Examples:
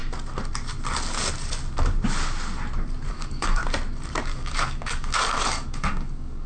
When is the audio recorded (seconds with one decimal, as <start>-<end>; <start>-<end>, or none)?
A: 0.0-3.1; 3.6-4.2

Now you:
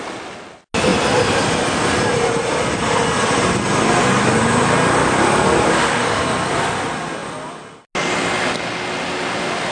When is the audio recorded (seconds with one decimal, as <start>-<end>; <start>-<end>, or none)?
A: 0.0-5.0; 6.2-9.7

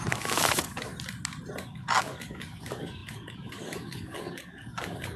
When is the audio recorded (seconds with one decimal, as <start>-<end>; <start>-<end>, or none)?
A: 0.9-1.6

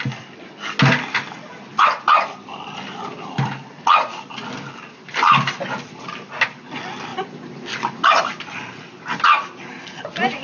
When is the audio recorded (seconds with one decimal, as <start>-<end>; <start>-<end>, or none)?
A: 0.0-1.7; 2.3-10.4

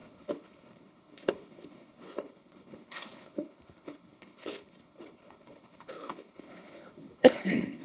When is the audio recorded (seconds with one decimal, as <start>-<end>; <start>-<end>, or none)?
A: none